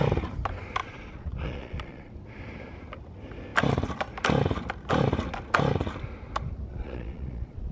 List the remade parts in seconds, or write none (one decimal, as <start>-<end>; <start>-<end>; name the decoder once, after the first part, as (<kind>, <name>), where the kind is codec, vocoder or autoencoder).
0.8-2.1 (vocoder, Vocos); 6.7-7.7